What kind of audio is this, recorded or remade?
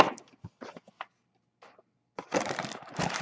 recorded